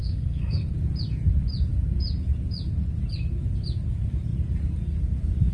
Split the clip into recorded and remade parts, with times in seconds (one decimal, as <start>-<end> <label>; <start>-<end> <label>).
0.0-0.7 remade; 0.7-5.5 recorded